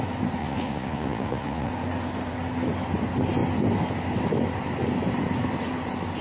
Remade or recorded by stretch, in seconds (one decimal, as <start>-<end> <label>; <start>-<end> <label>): 0.0-0.4 recorded; 0.4-1.7 remade; 1.7-6.2 recorded